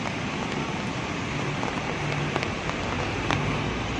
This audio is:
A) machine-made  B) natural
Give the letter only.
B